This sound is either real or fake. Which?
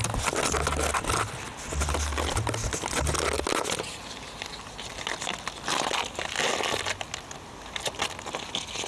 real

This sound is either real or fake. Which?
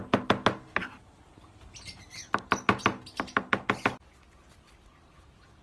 real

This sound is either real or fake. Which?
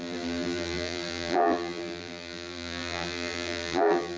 fake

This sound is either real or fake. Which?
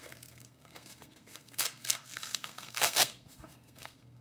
fake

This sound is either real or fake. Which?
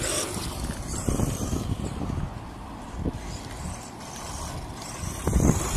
fake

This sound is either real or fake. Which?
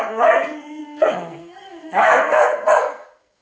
fake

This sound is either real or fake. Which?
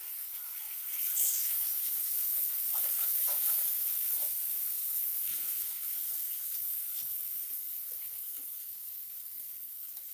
fake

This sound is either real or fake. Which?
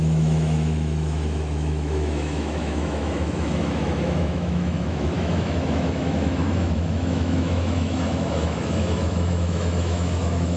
fake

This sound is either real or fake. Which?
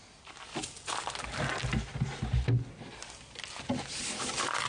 real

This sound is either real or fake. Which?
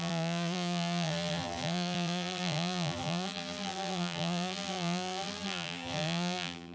fake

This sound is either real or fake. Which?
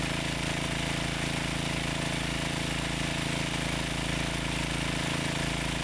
real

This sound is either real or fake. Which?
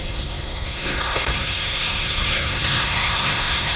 fake